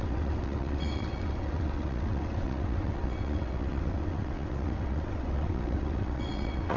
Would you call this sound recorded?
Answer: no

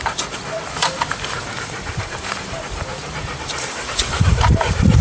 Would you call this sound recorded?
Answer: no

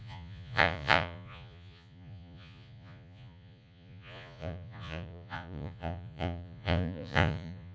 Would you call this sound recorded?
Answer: no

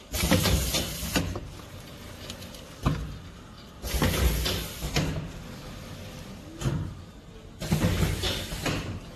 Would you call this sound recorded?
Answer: yes